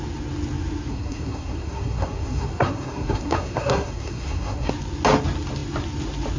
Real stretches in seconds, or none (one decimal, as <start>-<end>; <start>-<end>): 0.0-0.9; 4.7-6.4